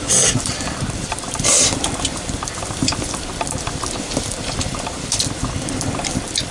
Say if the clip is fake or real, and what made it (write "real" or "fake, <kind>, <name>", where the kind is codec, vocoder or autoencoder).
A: fake, vocoder, BigVGAN v2